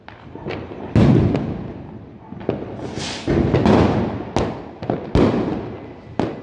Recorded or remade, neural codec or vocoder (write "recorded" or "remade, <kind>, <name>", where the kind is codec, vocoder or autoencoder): recorded